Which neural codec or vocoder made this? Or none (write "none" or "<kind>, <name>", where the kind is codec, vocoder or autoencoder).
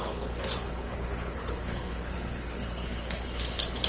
codec, HILCodec